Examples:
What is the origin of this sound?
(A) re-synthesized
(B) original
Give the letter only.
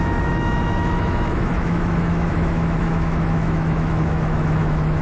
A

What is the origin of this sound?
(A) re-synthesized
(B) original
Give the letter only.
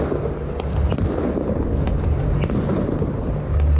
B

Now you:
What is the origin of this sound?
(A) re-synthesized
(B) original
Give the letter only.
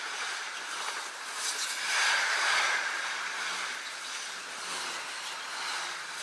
B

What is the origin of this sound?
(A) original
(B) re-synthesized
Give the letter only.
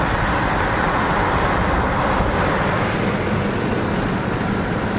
A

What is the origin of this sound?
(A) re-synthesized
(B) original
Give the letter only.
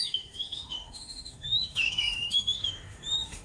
A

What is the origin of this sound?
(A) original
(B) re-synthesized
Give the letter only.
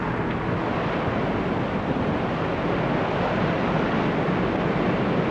A